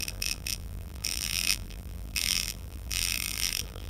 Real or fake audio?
fake